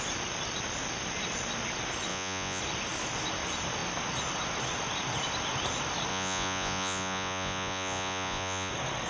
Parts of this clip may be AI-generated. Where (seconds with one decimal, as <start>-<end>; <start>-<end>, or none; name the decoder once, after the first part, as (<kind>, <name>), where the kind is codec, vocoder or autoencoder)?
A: 2.1-2.6 (vocoder, Vocos); 6.1-8.7